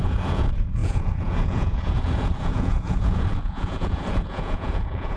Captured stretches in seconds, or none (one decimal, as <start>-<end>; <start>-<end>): none